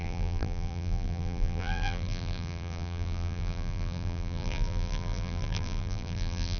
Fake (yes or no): yes